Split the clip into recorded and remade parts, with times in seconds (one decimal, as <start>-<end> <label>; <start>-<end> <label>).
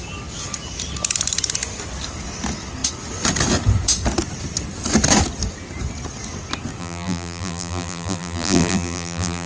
0.0-6.8 recorded; 6.8-9.5 remade